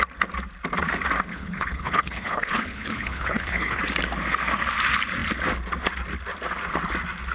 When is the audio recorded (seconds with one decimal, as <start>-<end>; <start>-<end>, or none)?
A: 0.0-1.3; 3.8-7.3